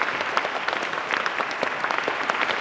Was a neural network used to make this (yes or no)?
no